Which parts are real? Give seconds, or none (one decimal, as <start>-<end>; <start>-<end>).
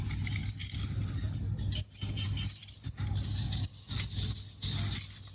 0.0-5.3